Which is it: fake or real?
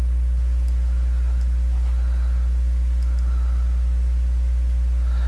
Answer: real